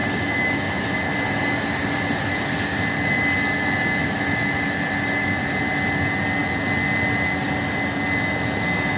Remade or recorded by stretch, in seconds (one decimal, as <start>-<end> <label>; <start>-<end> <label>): 0.0-4.0 recorded; 4.0-5.6 remade; 5.6-9.0 recorded